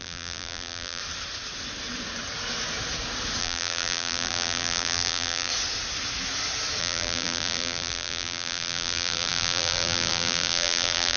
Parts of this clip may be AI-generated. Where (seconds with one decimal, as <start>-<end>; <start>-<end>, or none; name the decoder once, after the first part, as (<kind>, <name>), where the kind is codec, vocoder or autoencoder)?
0.0-1.0 (vocoder, BigVGAN v2); 3.4-5.5; 6.8-11.2